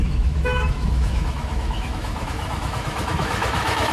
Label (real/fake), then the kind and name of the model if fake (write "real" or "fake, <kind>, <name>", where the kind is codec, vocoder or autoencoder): fake, autoencoder, DAC-VAE